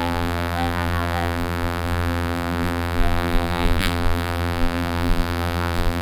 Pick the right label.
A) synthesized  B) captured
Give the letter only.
A